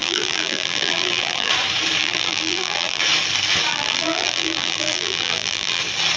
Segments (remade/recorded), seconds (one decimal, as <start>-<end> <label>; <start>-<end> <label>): 0.0-1.5 remade; 1.5-2.0 recorded; 2.0-3.0 remade; 3.0-3.7 recorded; 3.7-5.8 remade; 5.8-6.2 recorded